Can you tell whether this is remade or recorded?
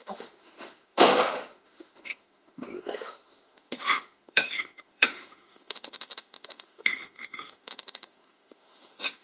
remade